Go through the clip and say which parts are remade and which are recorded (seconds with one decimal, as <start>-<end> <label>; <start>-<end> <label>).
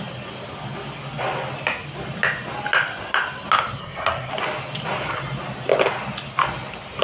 0.0-3.8 recorded; 3.8-4.3 remade; 4.3-7.0 recorded